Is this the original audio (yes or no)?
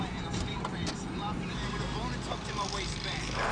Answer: yes